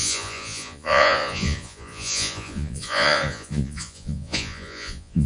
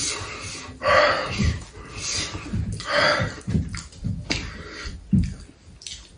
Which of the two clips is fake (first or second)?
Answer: first